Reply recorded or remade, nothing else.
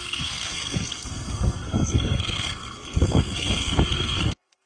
remade